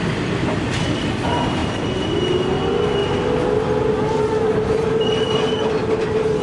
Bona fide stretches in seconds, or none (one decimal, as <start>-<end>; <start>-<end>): 0.0-6.4